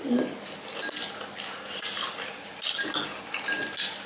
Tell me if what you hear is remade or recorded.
recorded